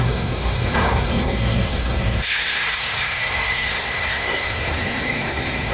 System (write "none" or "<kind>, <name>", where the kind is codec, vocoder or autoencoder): codec, SNAC